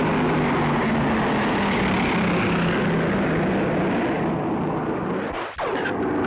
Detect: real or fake real